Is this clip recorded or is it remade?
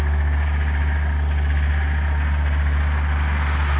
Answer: recorded